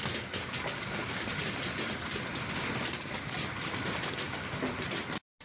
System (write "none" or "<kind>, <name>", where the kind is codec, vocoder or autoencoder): none